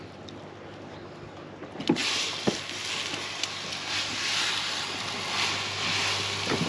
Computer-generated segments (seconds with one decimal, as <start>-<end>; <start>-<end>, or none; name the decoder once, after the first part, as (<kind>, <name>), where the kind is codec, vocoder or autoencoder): none

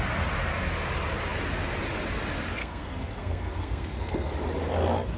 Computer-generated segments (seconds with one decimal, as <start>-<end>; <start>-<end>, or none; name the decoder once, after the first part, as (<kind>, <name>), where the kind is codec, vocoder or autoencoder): 2.6-4.3 (codec, SNAC)

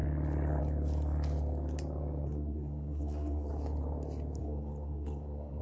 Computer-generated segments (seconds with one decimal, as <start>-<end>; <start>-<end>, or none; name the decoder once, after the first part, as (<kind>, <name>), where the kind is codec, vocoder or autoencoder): 2.2-3.5 (codec, SNAC); 4.4-5.6

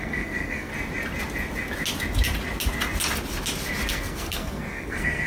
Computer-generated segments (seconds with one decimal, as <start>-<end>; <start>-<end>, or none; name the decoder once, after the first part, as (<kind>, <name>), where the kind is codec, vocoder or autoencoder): 0.0-0.7 (codec, SNAC); 3.9-5.3